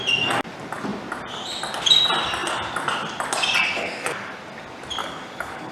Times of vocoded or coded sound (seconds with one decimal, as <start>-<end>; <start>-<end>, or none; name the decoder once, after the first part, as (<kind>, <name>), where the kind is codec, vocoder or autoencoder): 3.6-4.3 (codec, DAC); 5.0-5.7